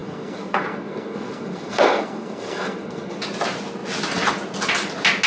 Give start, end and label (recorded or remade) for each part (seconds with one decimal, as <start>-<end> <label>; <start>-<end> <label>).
0.0-3.2 remade; 3.2-5.3 recorded